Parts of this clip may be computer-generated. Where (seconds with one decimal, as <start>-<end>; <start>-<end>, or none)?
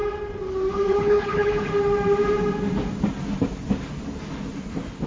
0.7-1.7